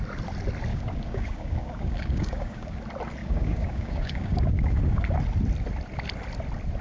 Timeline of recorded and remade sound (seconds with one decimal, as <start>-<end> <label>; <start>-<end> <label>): 0.0-0.7 recorded; 0.7-2.8 remade; 2.8-3.2 recorded; 3.2-5.1 remade; 5.1-6.8 recorded